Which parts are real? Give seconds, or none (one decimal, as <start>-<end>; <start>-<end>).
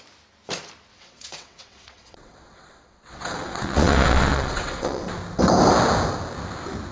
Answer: 0.0-0.9; 5.0-6.9